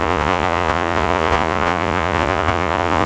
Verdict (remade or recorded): remade